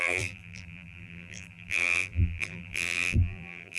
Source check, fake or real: fake